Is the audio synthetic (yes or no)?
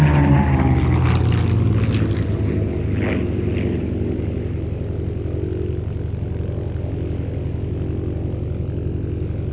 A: no